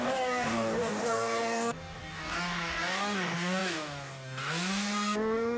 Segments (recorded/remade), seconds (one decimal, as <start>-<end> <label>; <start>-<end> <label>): 0.0-5.6 remade